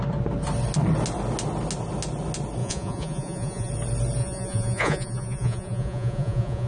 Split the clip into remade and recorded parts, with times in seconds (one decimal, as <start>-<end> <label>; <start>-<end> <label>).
0.0-2.6 recorded; 2.6-3.7 remade; 3.7-4.2 recorded; 4.2-6.7 remade